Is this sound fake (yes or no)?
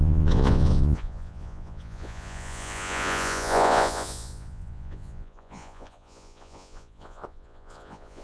yes